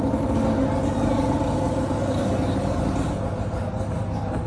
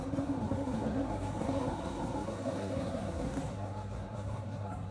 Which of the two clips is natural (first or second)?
first